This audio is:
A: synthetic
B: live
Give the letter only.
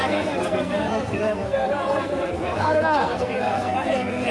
A